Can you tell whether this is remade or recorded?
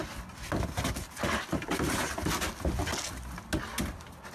recorded